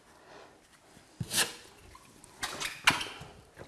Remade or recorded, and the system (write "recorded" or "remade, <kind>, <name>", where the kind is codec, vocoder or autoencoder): recorded